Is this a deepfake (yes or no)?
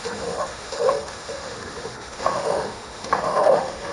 yes